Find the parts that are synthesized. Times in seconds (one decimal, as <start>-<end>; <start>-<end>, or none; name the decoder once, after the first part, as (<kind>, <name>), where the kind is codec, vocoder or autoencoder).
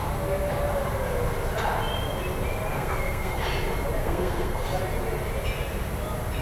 2.7-3.4 (codec, SNAC); 4.0-4.8